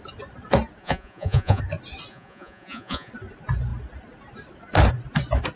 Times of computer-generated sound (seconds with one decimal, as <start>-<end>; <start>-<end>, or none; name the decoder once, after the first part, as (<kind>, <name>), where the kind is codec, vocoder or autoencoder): 0.8-1.6 (vocoder, Vocos); 2.1-3.1